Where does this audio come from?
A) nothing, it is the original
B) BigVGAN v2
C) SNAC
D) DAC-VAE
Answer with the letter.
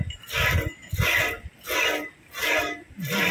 A